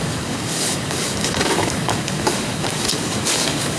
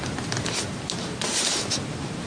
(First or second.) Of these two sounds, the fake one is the first